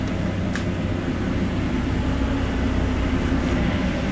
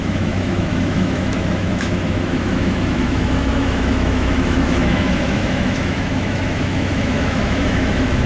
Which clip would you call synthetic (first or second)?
second